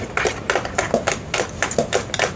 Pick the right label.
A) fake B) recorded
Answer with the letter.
B